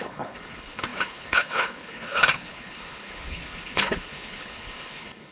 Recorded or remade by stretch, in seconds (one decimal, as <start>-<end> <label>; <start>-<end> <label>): 0.0-5.3 remade